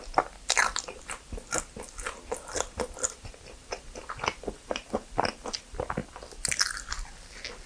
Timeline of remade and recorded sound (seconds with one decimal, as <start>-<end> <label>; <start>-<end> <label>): 0.0-7.7 recorded